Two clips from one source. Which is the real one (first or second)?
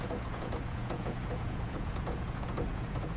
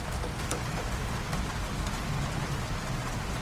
second